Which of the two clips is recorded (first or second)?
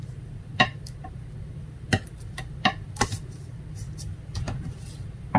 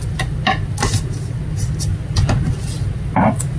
second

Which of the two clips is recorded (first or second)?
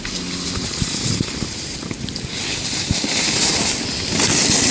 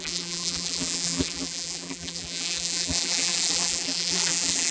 first